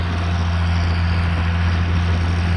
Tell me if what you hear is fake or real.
real